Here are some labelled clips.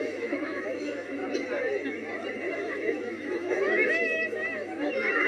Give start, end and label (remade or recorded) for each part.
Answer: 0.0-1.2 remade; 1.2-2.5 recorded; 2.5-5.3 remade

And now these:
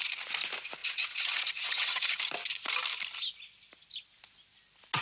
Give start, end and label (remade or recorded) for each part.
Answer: 0.0-0.8 recorded; 0.8-2.2 remade; 2.2-5.0 recorded

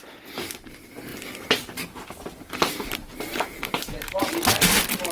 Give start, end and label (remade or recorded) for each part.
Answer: 0.0-5.1 recorded

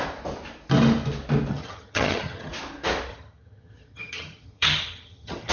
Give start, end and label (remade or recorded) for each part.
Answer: 0.0-1.5 recorded; 1.5-2.5 remade; 2.5-3.1 recorded; 3.1-5.5 remade

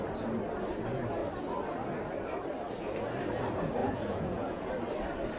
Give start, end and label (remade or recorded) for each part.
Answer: 0.0-3.8 recorded; 3.8-4.7 remade; 4.7-5.4 recorded

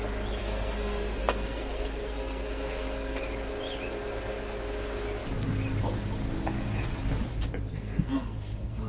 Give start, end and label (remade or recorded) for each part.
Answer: 0.0-0.4 recorded; 0.4-3.2 remade; 3.2-7.7 recorded; 7.7-8.9 remade

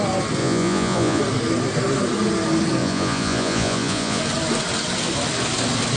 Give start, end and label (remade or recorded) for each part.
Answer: 0.0-0.4 recorded; 0.4-1.2 remade; 1.2-2.8 recorded; 2.8-4.2 remade; 4.2-6.0 recorded